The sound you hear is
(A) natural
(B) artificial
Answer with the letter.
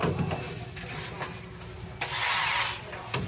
A